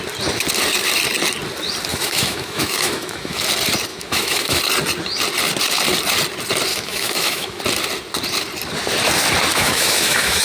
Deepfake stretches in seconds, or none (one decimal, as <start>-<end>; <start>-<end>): 1.9-3.4; 3.9-4.6; 6.7-7.6; 9.5-10.4